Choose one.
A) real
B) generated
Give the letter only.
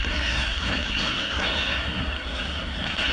B